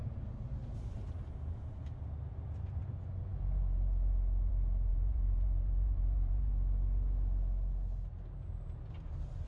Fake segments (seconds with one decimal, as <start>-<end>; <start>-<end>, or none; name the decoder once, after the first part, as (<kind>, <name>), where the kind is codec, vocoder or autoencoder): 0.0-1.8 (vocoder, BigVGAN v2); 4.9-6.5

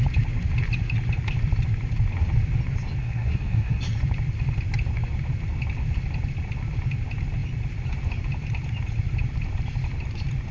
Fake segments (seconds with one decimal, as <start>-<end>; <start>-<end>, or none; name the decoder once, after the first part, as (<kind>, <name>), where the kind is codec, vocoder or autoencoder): 3.0-3.8 (codec, SNAC)

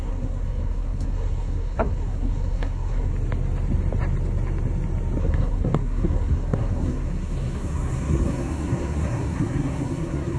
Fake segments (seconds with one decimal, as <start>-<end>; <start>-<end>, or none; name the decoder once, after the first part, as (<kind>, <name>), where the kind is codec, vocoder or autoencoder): 0.0-3.1 (codec, SNAC); 5.2-10.4

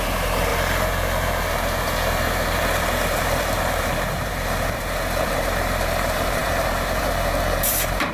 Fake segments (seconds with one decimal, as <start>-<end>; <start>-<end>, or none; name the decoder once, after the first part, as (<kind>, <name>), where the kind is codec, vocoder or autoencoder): 0.0-0.5 (vocoder, BigVGAN v2); 1.4-8.1

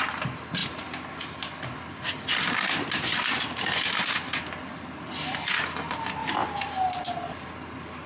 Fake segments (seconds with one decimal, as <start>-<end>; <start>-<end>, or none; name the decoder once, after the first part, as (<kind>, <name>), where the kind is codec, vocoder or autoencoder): none